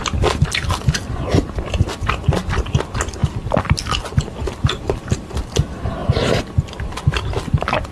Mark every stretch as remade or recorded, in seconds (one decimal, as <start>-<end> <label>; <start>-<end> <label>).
0.0-7.9 recorded